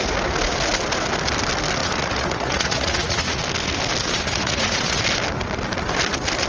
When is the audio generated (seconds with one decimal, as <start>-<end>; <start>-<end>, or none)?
1.8-3.4; 4.0-5.0